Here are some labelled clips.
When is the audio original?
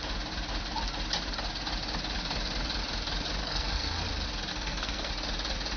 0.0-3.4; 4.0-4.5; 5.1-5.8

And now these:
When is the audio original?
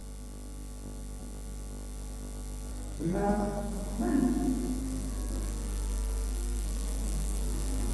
0.0-2.7; 3.8-4.8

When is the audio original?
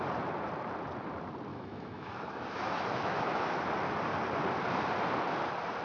0.0-1.5; 3.6-5.8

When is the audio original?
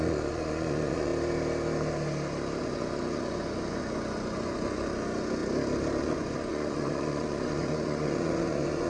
1.1-2.6; 5.4-6.0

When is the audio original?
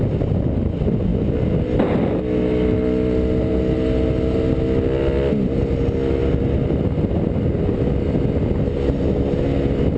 0.0-10.0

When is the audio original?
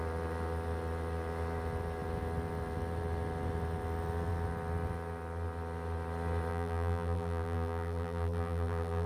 0.0-6.5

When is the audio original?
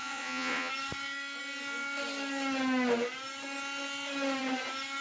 0.7-5.0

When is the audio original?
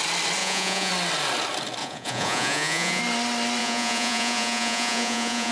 0.0-0.4; 0.9-1.8; 3.0-3.6